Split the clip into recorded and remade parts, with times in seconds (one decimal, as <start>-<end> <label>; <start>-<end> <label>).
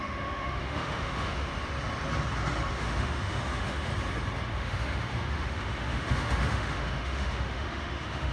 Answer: 0.0-1.5 remade; 1.5-2.7 recorded; 2.7-3.9 remade; 3.9-4.5 recorded; 4.5-8.3 remade